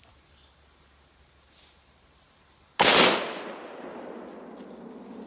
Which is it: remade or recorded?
recorded